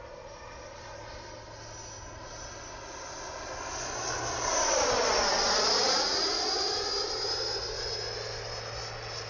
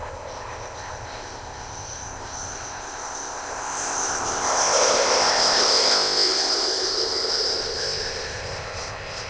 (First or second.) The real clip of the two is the first